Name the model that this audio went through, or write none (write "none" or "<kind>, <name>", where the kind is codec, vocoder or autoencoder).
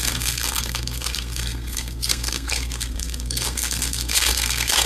codec, SNAC